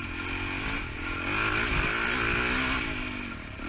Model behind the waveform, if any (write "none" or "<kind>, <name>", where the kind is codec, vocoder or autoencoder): none